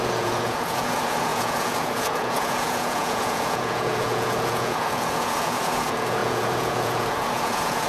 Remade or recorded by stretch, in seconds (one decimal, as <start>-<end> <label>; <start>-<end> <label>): 0.0-7.9 remade